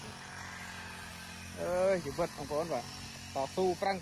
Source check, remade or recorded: recorded